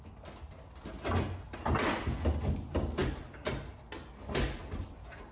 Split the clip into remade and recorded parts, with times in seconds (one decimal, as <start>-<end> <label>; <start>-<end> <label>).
0.0-5.3 recorded